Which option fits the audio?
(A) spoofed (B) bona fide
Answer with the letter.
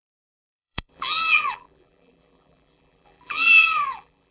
A